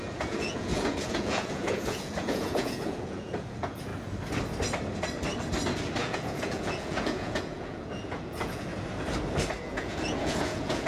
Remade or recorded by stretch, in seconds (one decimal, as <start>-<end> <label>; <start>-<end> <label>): 0.0-3.9 remade; 3.9-6.0 recorded; 6.0-8.7 remade; 8.7-9.6 recorded; 9.6-10.9 remade